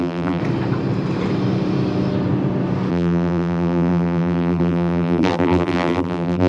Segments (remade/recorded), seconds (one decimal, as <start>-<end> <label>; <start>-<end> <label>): 0.0-0.4 remade; 0.4-2.9 recorded; 2.9-6.5 remade